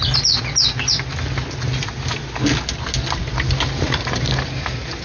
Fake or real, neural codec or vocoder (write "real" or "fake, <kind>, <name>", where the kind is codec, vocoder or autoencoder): real